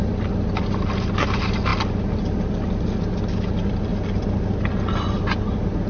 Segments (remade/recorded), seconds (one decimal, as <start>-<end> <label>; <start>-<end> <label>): 0.0-5.9 recorded